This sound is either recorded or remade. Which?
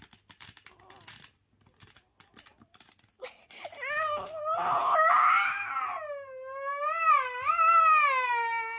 recorded